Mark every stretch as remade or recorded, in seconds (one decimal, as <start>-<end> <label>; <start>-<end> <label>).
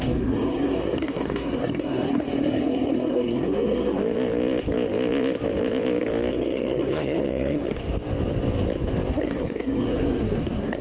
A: 0.0-4.0 remade; 4.0-6.3 recorded; 6.3-7.8 remade; 7.8-9.1 recorded; 9.1-10.8 remade